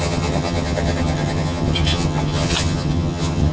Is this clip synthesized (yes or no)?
yes